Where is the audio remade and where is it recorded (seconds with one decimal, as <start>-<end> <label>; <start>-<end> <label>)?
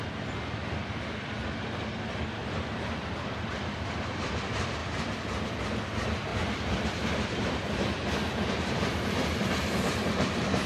0.0-2.4 recorded; 2.4-4.3 remade; 4.3-6.3 recorded; 6.3-10.7 remade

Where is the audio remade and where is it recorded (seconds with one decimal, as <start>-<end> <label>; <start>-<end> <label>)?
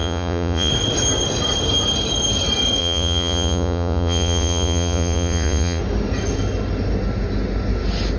0.0-0.7 remade; 0.7-2.8 recorded; 2.8-5.8 remade; 5.8-8.2 recorded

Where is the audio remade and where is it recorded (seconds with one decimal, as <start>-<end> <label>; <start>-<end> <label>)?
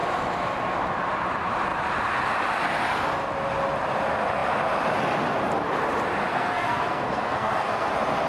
0.0-6.3 recorded; 6.3-7.9 remade; 7.9-8.3 recorded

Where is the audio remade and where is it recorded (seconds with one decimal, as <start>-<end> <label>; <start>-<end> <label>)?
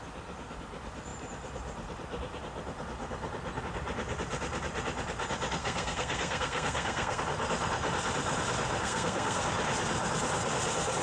0.0-5.6 recorded; 5.6-7.2 remade; 7.2-8.8 recorded; 8.8-9.4 remade; 9.4-11.0 recorded